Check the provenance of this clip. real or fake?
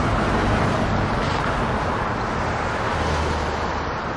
real